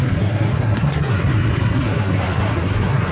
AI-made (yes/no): yes